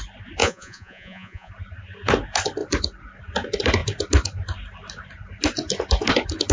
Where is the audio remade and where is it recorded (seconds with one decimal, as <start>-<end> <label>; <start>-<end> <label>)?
0.0-0.4 recorded; 0.4-1.5 remade; 1.5-6.5 recorded